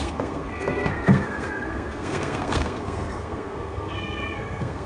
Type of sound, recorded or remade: remade